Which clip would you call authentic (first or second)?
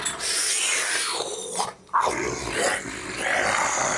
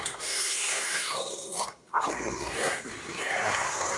first